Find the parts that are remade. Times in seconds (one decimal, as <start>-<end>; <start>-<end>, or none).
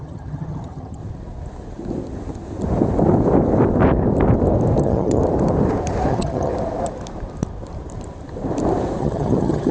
0.0-1.0; 4.8-5.2; 6.1-6.5; 9.0-9.7